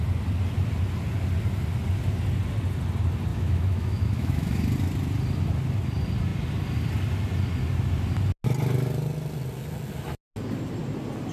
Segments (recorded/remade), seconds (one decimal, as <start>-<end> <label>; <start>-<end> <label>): 0.0-3.3 recorded; 3.3-4.6 remade; 4.6-11.3 recorded